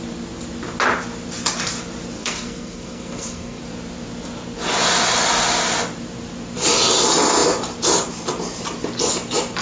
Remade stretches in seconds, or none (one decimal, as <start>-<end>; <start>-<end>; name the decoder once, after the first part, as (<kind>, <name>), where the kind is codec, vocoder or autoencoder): 2.2-3.6 (codec, SNAC)